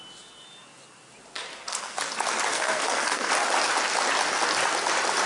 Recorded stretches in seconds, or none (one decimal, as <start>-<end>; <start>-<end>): 0.0-1.5; 2.0-2.5; 3.3-5.3